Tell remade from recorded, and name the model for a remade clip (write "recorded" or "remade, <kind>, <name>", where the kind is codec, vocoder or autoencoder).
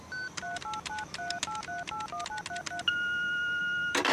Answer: recorded